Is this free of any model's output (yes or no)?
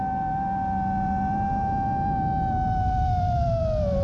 yes